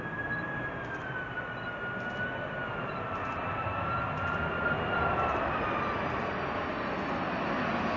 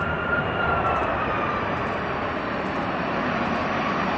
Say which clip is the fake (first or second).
second